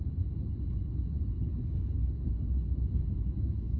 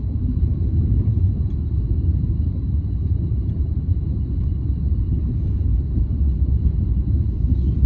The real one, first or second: first